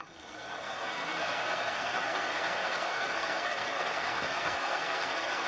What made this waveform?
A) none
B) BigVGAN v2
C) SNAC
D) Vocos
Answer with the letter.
C